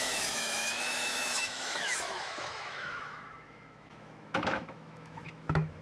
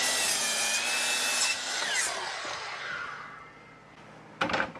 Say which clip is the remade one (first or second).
first